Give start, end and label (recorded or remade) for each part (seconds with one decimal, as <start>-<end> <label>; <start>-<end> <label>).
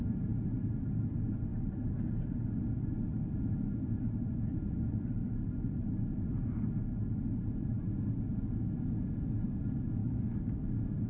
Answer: 0.0-10.0 recorded; 10.0-10.7 remade; 10.7-11.1 recorded